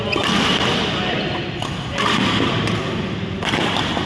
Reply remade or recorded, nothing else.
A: recorded